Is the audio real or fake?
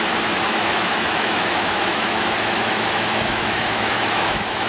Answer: fake